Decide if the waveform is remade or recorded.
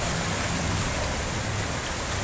recorded